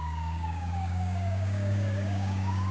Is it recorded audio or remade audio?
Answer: remade